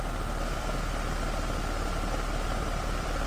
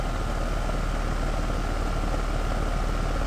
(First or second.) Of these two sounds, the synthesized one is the first